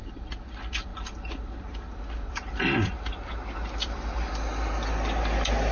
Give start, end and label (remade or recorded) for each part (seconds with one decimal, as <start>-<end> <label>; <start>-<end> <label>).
0.0-0.9 recorded; 0.9-4.3 remade; 4.3-5.7 recorded